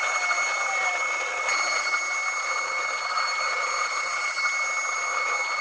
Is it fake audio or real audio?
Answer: real